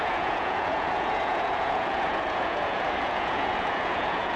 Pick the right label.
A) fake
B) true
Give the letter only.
A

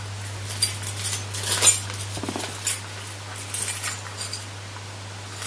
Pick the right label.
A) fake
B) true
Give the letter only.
B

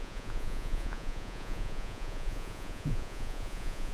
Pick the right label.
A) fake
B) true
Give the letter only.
A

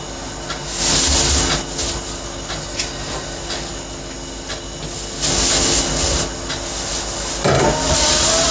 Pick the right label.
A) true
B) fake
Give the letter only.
A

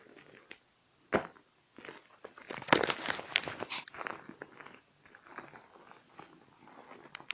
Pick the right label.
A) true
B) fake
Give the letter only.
A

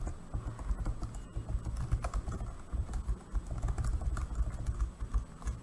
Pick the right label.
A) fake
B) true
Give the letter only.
B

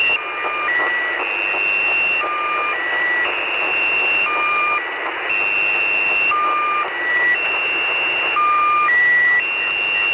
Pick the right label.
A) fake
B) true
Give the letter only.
B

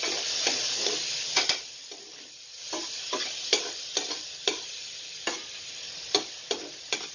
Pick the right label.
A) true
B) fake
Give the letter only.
A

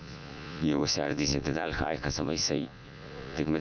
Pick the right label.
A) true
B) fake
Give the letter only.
B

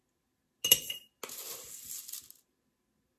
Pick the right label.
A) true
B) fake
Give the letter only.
A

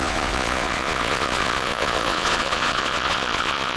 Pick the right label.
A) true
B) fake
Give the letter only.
B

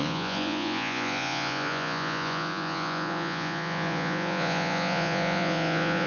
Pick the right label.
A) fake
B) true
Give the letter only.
A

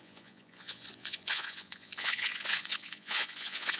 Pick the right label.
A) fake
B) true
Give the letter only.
A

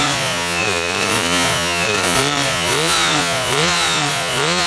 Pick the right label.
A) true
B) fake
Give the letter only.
B